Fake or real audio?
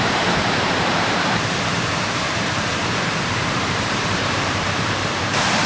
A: fake